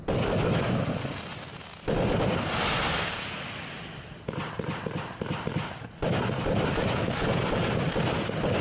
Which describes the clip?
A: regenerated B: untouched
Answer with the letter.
B